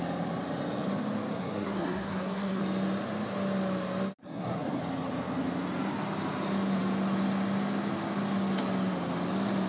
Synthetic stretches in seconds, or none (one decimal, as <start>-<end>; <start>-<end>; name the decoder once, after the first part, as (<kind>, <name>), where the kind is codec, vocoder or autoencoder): 1.3-2.6 (codec, SNAC); 4.2-4.8